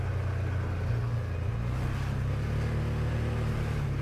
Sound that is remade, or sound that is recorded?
recorded